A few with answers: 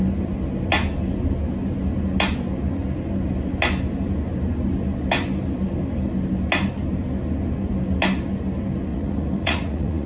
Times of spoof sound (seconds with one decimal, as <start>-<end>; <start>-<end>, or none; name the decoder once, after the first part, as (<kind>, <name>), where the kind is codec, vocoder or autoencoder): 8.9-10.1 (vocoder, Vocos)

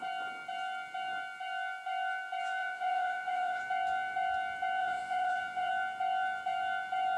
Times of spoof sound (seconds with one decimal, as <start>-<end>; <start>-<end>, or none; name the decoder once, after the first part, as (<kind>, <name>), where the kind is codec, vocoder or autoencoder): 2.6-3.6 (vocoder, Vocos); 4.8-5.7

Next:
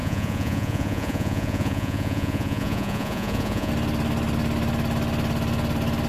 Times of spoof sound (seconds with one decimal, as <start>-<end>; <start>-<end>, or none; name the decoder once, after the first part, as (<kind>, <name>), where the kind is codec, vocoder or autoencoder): 0.0-3.7 (vocoder, Vocos)

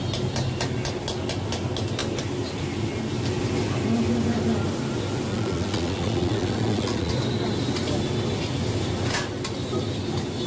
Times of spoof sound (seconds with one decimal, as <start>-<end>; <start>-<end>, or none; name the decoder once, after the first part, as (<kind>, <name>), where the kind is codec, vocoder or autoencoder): 5.3-7.1 (vocoder, Vocos)

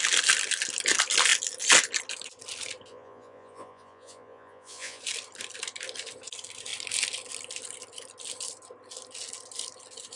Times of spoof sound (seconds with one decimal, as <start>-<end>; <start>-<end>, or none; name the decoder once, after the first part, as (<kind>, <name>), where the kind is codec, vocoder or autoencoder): 2.9-5.0 (vocoder, Vocos)

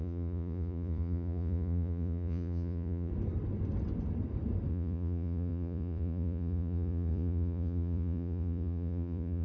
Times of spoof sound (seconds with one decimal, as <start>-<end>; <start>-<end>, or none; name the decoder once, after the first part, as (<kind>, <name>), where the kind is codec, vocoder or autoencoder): 0.0-3.1 (vocoder, Vocos); 4.7-9.4

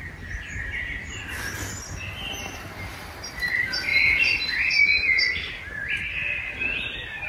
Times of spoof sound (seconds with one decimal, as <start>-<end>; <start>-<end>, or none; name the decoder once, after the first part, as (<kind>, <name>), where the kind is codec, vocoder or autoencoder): none